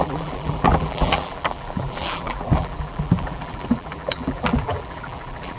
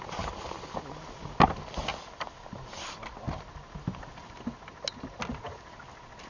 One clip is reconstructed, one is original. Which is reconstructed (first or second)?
first